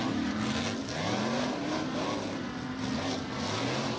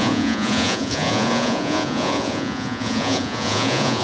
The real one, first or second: first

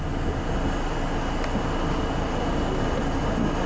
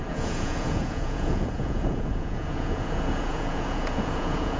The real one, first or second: first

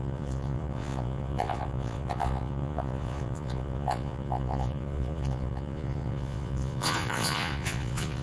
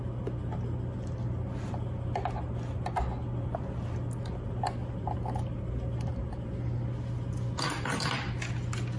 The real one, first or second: second